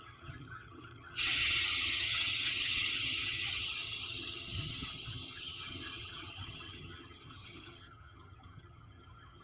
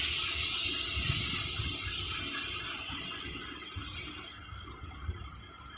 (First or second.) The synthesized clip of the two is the first